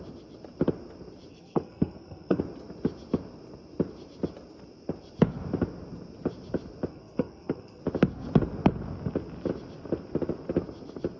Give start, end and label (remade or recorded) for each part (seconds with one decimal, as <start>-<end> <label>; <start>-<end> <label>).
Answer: 0.0-1.3 recorded; 1.3-2.4 remade; 2.4-6.9 recorded; 6.9-7.8 remade; 7.8-11.2 recorded